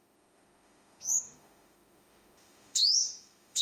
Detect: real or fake fake